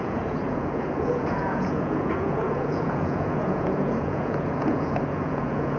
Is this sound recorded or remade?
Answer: remade